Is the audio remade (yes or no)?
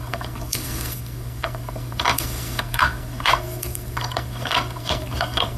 yes